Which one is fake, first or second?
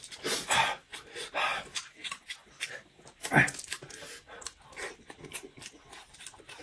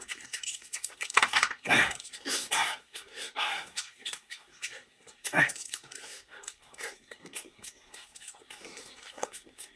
second